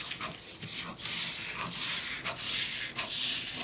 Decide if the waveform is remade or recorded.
recorded